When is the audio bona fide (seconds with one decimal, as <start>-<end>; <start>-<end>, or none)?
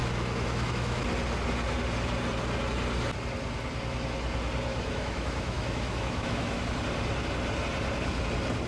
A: 1.0-4.7; 6.6-8.7